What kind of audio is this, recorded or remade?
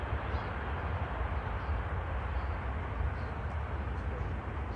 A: recorded